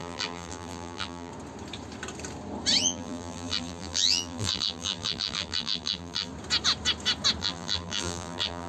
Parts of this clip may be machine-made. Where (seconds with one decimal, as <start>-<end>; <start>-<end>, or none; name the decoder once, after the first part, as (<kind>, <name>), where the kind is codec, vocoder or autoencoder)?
0.0-1.3 (vocoder, BigVGAN v2); 2.8-6.3; 7.4-8.7